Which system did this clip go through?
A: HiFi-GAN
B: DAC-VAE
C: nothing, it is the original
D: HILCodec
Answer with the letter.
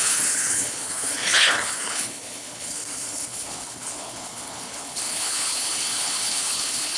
D